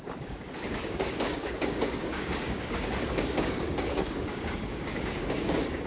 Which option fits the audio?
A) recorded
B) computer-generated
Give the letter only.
B